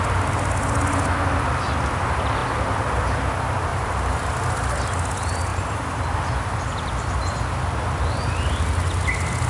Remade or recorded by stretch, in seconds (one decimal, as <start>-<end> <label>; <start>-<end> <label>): 0.0-3.7 recorded; 3.7-4.3 remade; 4.3-5.5 recorded; 5.5-6.3 remade; 6.3-9.5 recorded